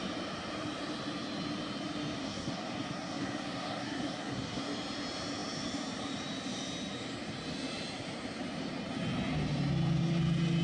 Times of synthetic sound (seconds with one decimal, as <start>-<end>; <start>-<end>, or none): 2.2-4.6